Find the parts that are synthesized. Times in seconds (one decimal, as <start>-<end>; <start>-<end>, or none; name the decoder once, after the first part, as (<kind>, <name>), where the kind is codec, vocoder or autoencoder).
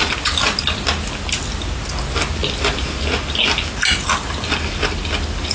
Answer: none